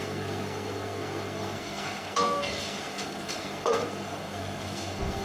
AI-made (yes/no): yes